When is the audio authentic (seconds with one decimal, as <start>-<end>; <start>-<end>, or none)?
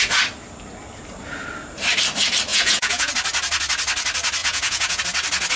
0.0-2.5; 3.1-4.4; 5.0-5.6